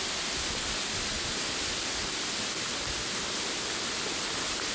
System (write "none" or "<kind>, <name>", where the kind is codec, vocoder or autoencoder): none